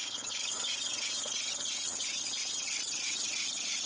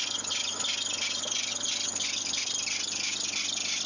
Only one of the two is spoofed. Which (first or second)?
first